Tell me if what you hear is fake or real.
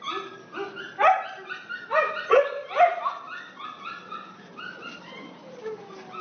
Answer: real